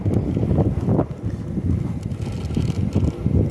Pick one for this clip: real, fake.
real